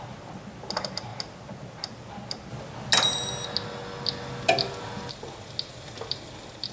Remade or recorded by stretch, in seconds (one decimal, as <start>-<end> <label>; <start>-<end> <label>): 0.0-6.7 recorded

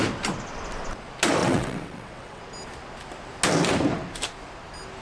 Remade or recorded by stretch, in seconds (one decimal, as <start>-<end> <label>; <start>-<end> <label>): 0.0-1.4 recorded; 1.4-2.4 remade; 2.4-5.0 recorded

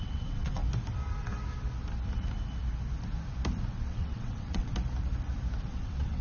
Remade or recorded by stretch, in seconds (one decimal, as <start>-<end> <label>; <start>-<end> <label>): 0.0-0.6 remade; 0.6-3.7 recorded; 3.7-4.7 remade; 4.7-5.7 recorded; 5.7-6.2 remade

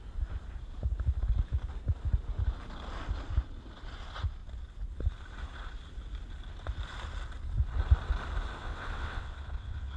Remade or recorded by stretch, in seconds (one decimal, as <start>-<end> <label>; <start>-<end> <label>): 0.0-8.6 recorded; 8.6-10.0 remade

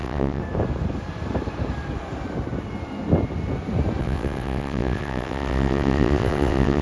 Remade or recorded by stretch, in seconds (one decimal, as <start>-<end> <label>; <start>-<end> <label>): 0.0-0.4 remade; 0.4-4.0 recorded; 4.0-6.8 remade